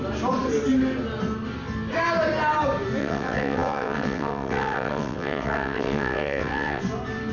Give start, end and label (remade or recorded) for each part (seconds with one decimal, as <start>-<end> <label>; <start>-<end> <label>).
0.0-3.0 recorded; 3.0-6.8 remade; 6.8-7.3 recorded